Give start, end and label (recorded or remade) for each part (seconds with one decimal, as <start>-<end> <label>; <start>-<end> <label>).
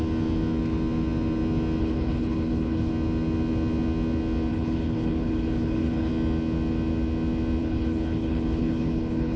0.0-1.8 recorded; 1.8-2.9 remade; 2.9-4.5 recorded; 4.5-6.1 remade; 6.1-7.6 recorded; 7.6-9.4 remade